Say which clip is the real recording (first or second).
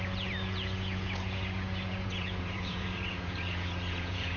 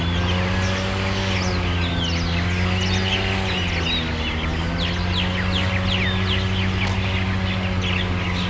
second